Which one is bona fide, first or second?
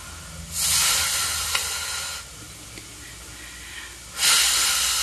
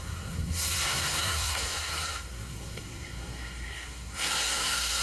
first